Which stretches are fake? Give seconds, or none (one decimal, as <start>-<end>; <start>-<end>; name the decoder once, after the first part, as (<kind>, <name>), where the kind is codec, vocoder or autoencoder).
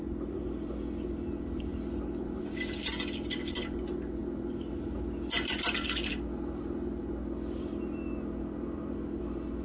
none